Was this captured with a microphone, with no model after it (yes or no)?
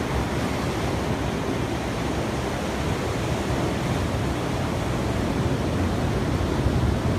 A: yes